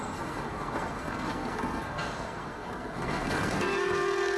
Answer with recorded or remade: remade